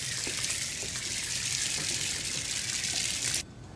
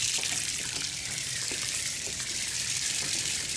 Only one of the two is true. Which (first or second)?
first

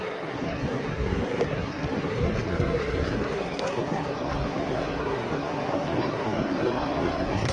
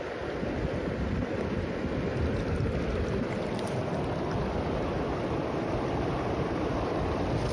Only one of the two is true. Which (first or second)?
second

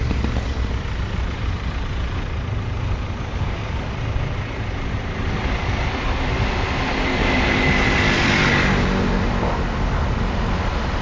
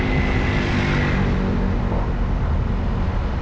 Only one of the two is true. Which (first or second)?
second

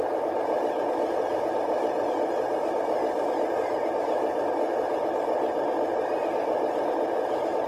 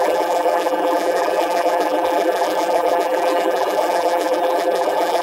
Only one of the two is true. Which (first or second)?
first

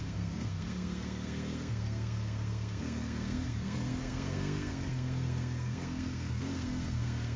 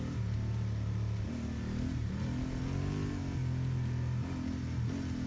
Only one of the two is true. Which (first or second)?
second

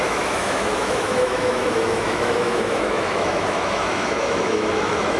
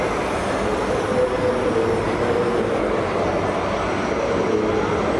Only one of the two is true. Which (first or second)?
second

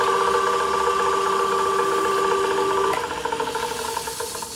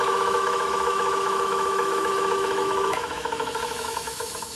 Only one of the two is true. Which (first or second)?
first